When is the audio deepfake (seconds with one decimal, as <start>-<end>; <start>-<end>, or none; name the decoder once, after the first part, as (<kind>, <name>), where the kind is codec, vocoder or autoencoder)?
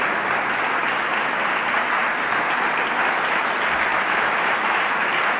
3.9-4.8 (autoencoder, DAC-VAE)